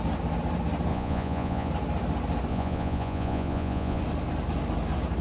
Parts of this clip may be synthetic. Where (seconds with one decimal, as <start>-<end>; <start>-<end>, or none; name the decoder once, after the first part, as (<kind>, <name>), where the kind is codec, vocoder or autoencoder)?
0.9-1.7 (vocoder, Vocos); 2.5-4.0